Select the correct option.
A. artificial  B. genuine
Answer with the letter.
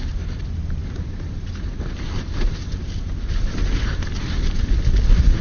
B